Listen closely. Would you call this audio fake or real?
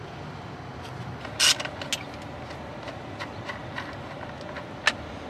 real